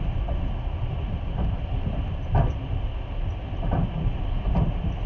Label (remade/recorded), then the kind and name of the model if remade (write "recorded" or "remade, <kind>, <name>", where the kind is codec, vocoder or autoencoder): recorded